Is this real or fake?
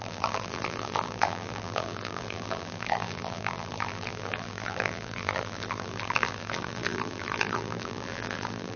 fake